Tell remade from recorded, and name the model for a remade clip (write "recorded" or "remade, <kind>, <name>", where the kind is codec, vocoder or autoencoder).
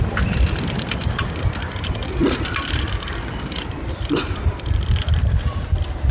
recorded